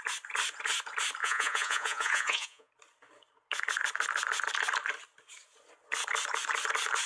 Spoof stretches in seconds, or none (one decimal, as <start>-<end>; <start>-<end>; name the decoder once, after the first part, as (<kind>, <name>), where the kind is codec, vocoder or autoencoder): 1.2-2.7 (vocoder, Vocos)